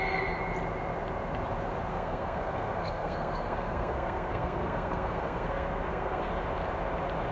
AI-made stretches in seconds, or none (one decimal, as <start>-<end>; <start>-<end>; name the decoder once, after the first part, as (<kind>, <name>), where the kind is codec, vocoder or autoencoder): 1.9-6.3 (codec, SNAC)